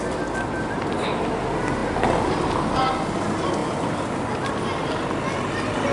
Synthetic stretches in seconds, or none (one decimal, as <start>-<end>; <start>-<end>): none